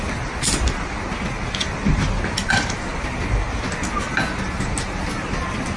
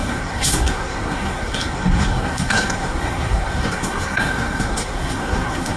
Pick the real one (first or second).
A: first